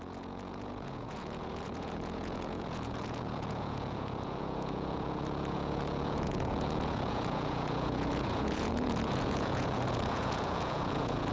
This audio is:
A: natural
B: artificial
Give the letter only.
B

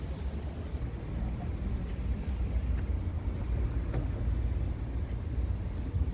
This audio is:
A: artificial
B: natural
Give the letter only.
B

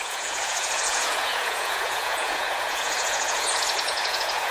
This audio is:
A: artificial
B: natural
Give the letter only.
A